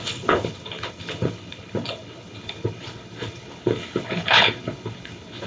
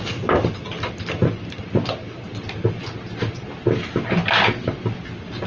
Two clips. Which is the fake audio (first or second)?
first